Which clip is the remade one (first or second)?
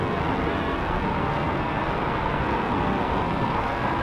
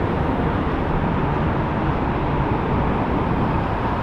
first